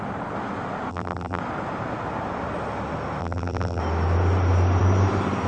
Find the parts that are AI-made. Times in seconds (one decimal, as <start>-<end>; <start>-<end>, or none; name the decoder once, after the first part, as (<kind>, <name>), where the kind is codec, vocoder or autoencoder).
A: 0.9-1.4 (vocoder, BigVGAN v2); 3.2-3.8